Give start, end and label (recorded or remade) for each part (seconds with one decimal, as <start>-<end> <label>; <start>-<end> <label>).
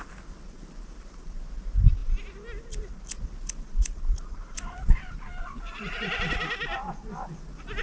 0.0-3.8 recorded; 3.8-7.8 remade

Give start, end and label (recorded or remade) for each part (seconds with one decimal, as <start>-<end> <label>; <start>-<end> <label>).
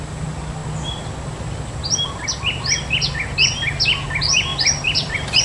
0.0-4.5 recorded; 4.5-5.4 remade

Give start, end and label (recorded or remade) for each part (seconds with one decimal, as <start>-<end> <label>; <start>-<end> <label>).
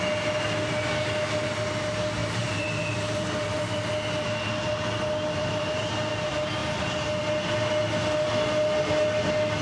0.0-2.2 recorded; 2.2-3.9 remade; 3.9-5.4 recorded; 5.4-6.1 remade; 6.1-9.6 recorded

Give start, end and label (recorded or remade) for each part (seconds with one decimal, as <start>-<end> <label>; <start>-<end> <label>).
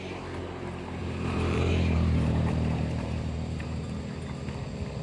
0.0-1.0 recorded; 1.0-4.0 remade; 4.0-5.0 recorded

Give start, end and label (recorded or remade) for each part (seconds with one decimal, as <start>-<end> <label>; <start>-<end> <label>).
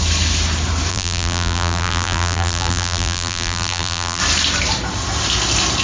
0.0-0.9 recorded; 0.9-4.2 remade; 4.2-5.8 recorded